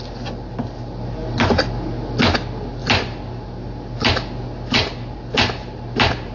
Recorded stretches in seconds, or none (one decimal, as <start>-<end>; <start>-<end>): 0.0-6.3

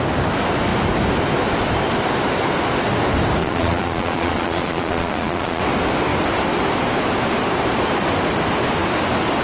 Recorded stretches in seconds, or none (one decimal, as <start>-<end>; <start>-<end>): 0.0-3.4; 5.6-9.4